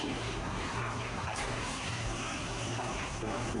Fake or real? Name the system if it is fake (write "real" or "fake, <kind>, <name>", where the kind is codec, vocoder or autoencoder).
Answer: fake, codec, SNAC